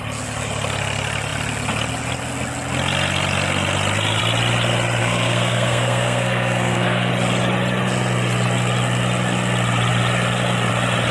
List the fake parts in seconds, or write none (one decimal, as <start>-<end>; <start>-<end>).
5.0-7.1